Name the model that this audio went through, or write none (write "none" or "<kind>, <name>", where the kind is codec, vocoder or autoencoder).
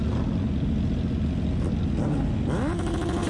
none